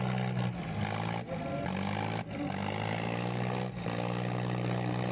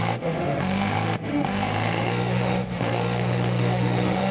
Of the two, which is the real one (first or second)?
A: first